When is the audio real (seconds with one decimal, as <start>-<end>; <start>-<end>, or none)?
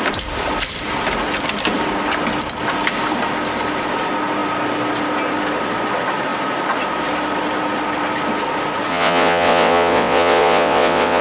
0.0-8.9